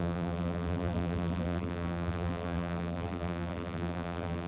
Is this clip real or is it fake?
fake